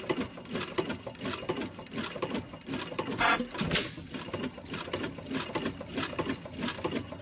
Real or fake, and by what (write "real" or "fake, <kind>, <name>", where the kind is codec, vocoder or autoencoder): real